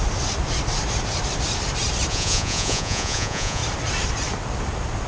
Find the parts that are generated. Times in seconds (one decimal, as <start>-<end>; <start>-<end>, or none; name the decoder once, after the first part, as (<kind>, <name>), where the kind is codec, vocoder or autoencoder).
2.1-3.6 (vocoder, Vocos)